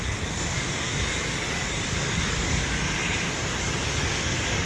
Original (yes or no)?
no